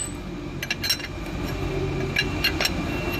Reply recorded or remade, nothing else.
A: recorded